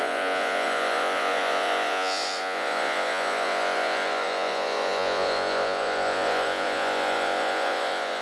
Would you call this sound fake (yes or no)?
yes